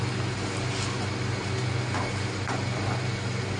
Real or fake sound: real